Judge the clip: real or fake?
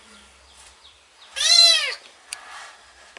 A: fake